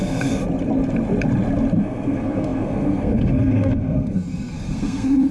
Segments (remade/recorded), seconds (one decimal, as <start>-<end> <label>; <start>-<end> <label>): 0.0-0.4 remade; 0.4-1.8 recorded; 1.8-5.3 remade